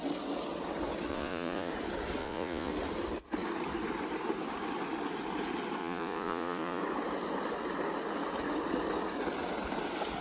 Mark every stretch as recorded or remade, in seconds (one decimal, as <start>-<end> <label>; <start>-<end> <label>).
0.0-1.1 recorded; 1.1-1.7 remade; 1.7-2.2 recorded; 2.2-2.7 remade; 2.7-5.8 recorded; 5.8-6.8 remade; 6.8-10.2 recorded